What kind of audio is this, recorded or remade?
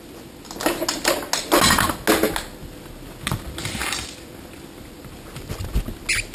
recorded